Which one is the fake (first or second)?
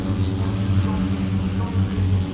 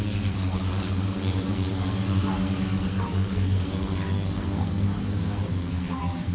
second